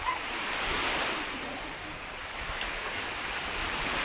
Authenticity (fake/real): fake